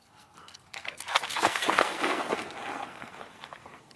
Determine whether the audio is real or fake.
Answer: fake